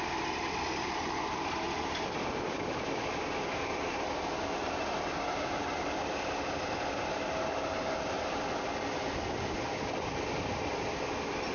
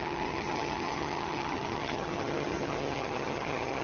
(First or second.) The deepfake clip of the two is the second